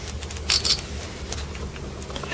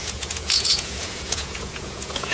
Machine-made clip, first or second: second